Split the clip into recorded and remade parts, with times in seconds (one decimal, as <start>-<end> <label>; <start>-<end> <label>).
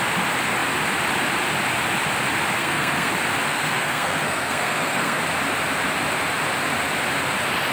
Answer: 0.0-2.6 recorded; 2.6-3.1 remade; 3.1-3.5 recorded; 3.5-5.2 remade; 5.2-7.7 recorded